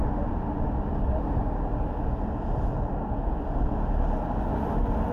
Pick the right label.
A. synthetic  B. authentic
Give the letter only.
B